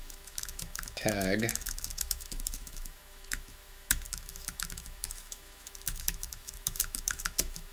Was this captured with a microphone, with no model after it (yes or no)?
no